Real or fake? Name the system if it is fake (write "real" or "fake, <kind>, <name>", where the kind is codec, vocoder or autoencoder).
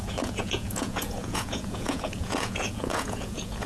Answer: fake, vocoder, Vocos